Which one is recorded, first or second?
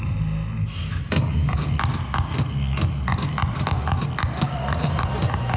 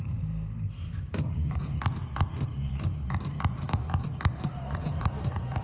first